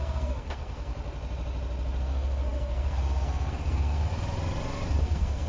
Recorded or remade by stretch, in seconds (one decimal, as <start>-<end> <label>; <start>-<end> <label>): 0.0-0.9 remade; 0.9-2.0 recorded; 2.0-4.1 remade; 4.1-5.0 recorded; 5.0-5.5 remade